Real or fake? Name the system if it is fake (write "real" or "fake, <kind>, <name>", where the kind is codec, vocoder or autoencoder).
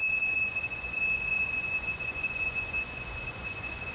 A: fake, vocoder, Vocos